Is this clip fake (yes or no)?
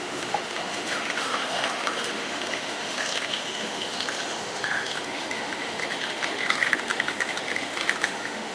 yes